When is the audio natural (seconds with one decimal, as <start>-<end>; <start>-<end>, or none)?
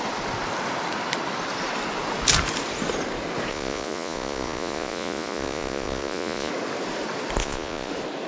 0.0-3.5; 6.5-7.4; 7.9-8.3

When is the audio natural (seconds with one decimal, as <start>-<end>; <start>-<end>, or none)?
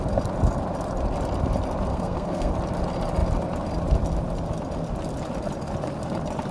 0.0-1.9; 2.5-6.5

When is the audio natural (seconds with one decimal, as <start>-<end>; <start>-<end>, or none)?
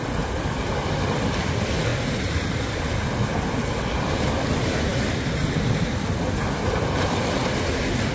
0.0-8.1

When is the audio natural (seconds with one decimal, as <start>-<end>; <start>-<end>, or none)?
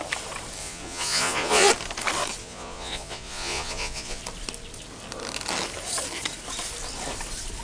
0.0-0.6; 1.7-2.4; 4.2-7.6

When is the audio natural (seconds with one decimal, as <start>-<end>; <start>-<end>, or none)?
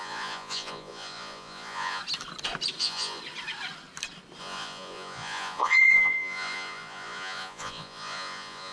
2.0-2.8; 3.2-4.4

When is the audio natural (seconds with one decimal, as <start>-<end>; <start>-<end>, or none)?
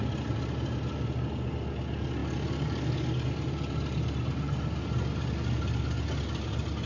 0.0-6.9